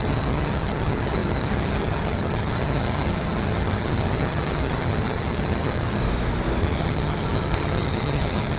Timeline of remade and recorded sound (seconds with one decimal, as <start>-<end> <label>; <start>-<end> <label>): 0.0-6.0 remade; 6.0-6.6 recorded; 6.6-8.6 remade